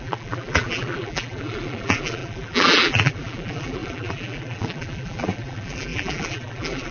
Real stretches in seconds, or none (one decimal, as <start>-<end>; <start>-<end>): none